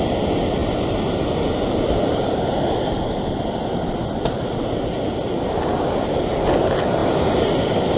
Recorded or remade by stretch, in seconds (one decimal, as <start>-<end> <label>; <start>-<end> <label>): 0.0-8.0 recorded